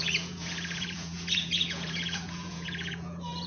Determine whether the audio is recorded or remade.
remade